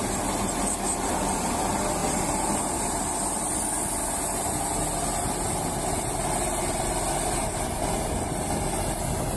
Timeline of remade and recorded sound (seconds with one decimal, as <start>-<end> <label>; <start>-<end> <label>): 0.0-9.4 recorded